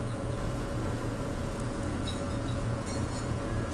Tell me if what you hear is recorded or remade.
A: remade